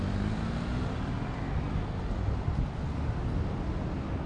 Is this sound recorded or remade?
recorded